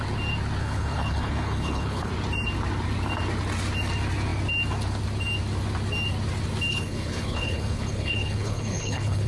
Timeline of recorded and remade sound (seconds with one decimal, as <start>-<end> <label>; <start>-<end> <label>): 0.0-0.6 recorded; 0.6-2.1 remade; 2.1-6.7 recorded; 6.7-9.3 remade